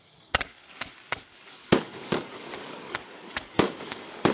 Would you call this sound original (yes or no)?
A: no